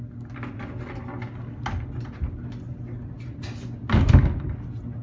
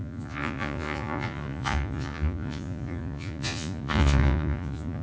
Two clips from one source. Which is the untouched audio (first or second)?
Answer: first